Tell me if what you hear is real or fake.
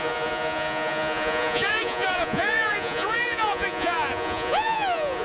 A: fake